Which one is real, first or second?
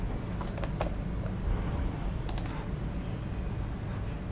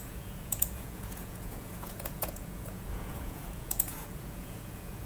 first